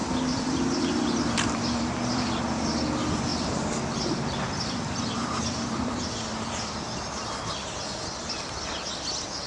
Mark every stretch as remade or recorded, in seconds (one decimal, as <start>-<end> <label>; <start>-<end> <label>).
0.0-2.4 remade; 2.4-3.3 recorded; 3.3-7.4 remade; 7.4-9.5 recorded